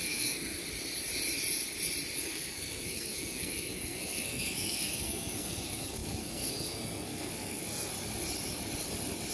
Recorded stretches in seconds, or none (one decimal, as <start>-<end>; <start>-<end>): 0.6-2.2; 7.9-9.3